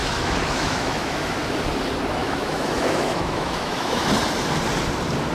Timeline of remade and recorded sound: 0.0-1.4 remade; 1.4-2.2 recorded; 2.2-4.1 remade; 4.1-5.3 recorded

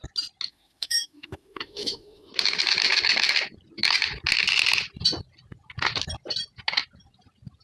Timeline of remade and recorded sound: 0.0-0.5 recorded; 0.5-2.3 remade; 2.3-7.6 recorded

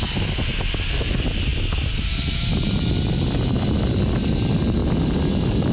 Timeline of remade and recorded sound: 0.0-4.8 recorded; 4.8-5.7 remade